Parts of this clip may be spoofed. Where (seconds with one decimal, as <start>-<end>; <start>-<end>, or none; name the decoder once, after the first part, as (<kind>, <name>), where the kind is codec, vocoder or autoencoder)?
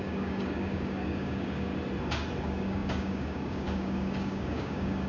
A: 0.0-1.7 (codec, DAC); 2.4-5.1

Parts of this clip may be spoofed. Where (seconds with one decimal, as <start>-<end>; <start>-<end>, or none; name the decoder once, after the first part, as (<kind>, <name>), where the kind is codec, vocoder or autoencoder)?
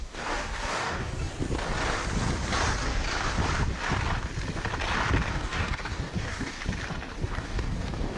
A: 0.0-1.3 (codec, DAC); 5.3-6.6; 7.3-8.2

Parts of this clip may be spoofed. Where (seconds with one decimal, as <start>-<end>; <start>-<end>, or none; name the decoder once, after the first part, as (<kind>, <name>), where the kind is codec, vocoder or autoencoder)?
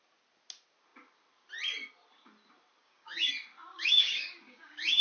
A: 2.8-3.3 (codec, DAC); 3.7-5.0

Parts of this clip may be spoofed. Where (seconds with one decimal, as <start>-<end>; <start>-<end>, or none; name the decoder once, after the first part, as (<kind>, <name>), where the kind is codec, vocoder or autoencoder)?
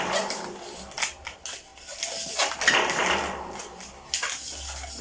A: none